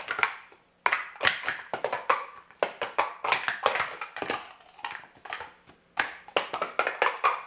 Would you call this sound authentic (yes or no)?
yes